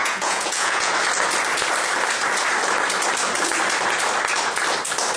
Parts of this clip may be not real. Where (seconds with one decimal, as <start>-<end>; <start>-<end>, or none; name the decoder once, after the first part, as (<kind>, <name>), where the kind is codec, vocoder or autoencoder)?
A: 0.0-0.9 (vocoder, Vocos)